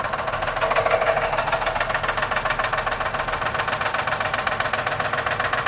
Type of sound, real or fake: real